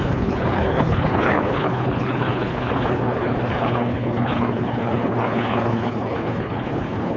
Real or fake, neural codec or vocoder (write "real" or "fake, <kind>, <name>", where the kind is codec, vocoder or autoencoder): fake, codec, HILCodec